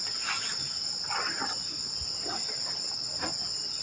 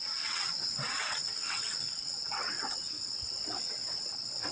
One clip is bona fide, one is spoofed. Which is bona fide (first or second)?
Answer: first